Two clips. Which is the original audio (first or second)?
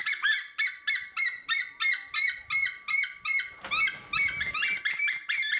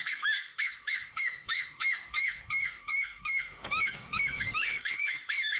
first